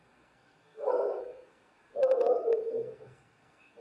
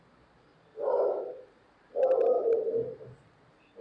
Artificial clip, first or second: first